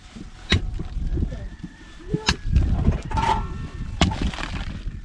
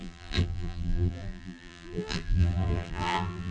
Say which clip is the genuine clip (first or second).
first